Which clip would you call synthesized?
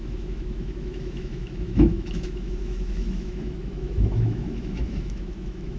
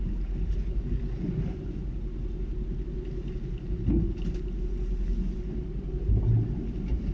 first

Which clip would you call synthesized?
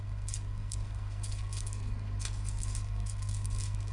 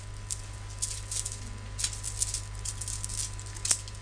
first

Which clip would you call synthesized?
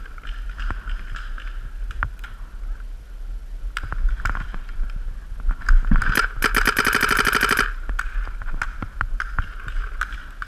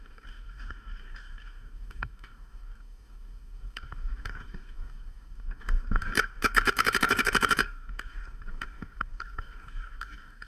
second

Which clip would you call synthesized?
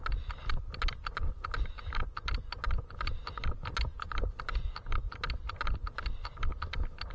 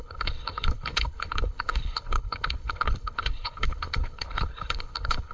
second